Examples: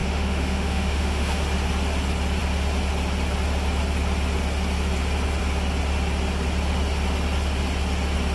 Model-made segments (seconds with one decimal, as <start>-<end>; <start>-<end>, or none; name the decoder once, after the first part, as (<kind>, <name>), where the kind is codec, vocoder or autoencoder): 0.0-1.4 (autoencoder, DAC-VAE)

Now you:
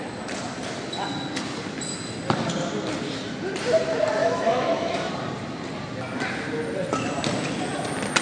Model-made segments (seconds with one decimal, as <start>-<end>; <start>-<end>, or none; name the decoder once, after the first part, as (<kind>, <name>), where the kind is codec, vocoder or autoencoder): 4.2-5.1 (autoencoder, DAC-VAE)

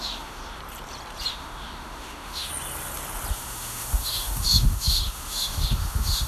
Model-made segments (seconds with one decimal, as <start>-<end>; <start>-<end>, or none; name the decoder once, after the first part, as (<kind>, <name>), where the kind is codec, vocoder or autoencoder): 0.0-0.6 (autoencoder, DAC-VAE); 1.3-2.5; 3.3-6.3

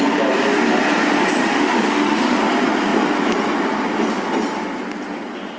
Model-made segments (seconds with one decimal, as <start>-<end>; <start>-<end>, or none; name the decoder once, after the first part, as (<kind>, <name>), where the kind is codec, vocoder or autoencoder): 1.4-2.4 (autoencoder, DAC-VAE)

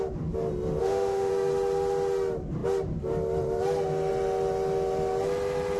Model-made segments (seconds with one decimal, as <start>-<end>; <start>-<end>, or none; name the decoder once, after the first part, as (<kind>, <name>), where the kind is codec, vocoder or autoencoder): 0.8-1.3 (autoencoder, DAC-VAE)

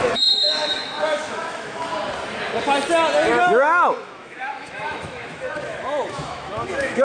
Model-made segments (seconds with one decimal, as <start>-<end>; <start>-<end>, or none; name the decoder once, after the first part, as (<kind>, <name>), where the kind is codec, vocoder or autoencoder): 0.0-1.9 (autoencoder, DAC-VAE); 3.4-7.0

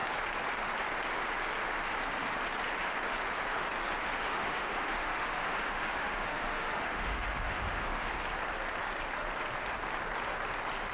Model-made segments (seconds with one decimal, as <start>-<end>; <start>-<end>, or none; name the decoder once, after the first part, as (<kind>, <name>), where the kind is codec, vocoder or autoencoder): 4.2-8.1 (autoencoder, DAC-VAE)